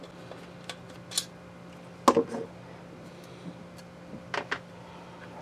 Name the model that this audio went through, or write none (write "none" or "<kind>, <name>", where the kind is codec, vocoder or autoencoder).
none